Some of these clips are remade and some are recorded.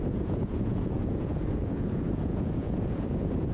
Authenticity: remade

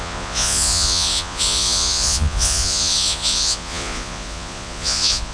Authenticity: remade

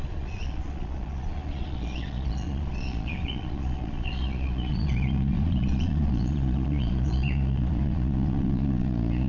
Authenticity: remade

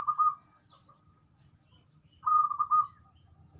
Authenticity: recorded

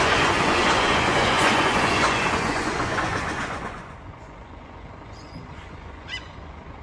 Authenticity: remade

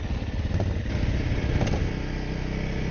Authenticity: recorded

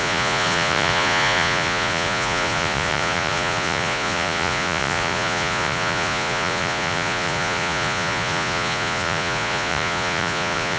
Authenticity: remade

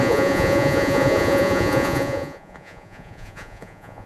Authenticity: remade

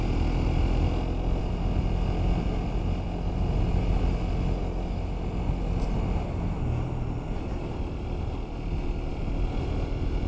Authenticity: recorded